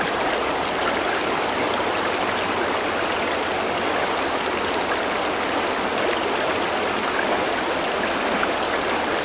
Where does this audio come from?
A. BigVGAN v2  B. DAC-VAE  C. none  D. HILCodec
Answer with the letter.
C